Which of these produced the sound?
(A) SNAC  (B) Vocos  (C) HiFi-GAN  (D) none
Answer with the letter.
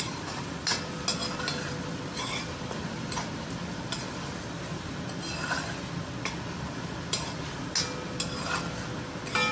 D